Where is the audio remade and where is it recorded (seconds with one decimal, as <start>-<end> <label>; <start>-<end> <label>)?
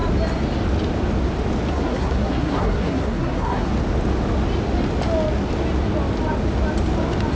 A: 0.0-1.7 recorded; 1.7-3.7 remade; 3.7-7.3 recorded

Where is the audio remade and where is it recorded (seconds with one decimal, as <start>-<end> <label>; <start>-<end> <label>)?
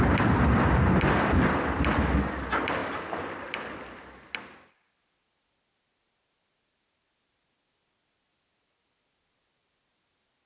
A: 0.0-10.5 recorded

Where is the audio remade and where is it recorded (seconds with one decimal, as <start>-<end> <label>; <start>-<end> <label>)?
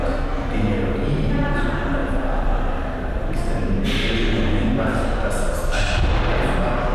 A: 0.0-2.0 recorded; 2.0-6.1 remade; 6.1-6.9 recorded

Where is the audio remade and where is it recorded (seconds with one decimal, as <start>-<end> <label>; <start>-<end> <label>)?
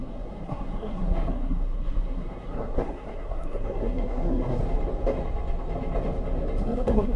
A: 0.0-4.6 remade; 4.6-6.6 recorded; 6.6-7.2 remade